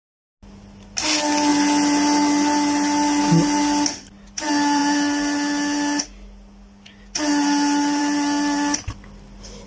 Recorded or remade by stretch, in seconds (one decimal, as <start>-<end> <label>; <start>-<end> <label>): 0.0-9.7 recorded